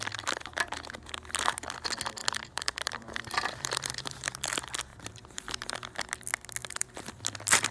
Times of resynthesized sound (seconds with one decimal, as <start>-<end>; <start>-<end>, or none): 2.2-4.4; 4.9-5.7; 6.6-7.2